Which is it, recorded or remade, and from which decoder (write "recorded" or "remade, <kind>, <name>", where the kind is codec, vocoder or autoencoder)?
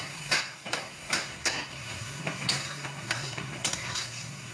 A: remade, codec, SNAC